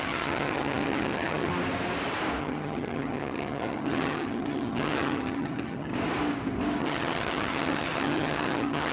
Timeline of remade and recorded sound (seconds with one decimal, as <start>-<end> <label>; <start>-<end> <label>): 0.0-1.5 remade; 1.5-2.4 recorded; 2.4-5.9 remade; 5.9-6.8 recorded; 6.8-8.9 remade

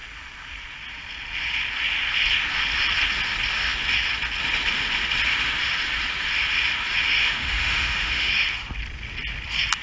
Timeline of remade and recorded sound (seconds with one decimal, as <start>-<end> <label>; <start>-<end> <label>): 0.0-7.2 recorded; 7.2-8.3 remade; 8.3-9.8 recorded